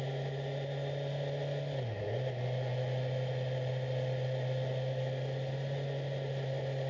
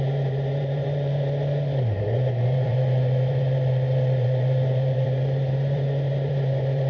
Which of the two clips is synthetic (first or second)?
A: second